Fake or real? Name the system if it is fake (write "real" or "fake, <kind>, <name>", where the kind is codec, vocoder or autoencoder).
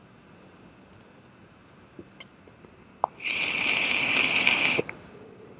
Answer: real